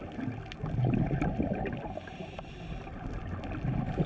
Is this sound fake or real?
real